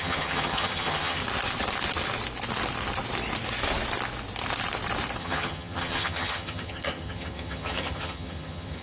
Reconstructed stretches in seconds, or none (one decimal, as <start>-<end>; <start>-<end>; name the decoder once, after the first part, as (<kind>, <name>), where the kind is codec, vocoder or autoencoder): 0.0-1.2 (vocoder, HiFi-GAN); 5.2-8.8